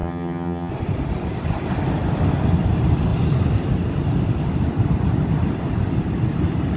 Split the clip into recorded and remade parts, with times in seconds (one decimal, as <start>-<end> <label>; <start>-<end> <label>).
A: 0.0-0.7 remade; 0.7-6.8 recorded